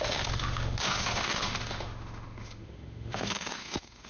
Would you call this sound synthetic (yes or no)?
yes